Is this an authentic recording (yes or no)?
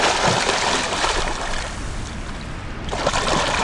yes